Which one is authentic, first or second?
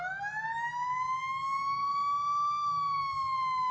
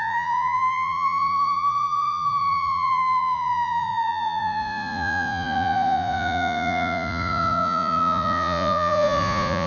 first